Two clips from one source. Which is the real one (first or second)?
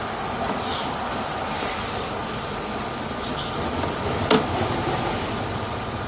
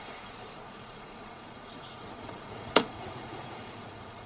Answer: first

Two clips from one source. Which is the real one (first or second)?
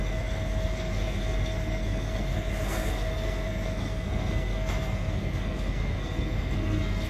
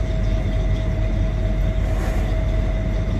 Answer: second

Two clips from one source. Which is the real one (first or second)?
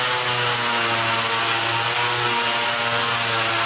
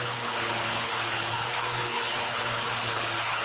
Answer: first